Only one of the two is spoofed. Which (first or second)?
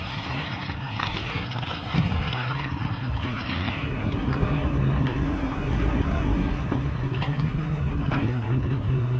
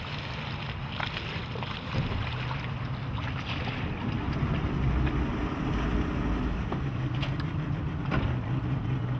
first